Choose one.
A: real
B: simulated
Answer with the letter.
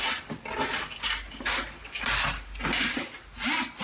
A